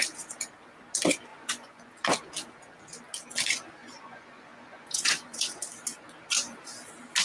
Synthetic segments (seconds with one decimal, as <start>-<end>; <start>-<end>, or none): 1.3-1.9; 3.8-5.6